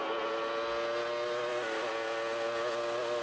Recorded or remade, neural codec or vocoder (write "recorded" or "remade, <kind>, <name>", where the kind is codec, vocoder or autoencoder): recorded